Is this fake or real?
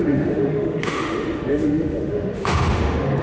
fake